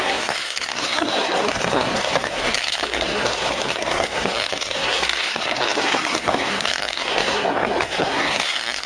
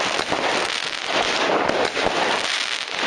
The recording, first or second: second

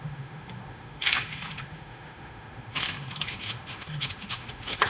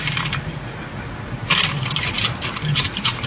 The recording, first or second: second